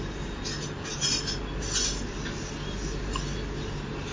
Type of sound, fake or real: real